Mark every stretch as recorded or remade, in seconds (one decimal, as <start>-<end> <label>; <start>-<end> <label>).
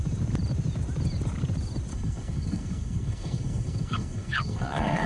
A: 0.0-1.9 recorded; 1.9-5.1 remade